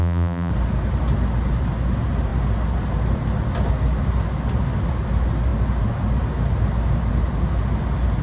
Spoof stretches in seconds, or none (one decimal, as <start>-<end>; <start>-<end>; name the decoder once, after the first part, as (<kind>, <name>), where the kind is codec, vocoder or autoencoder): 0.0-0.5 (vocoder, BigVGAN v2)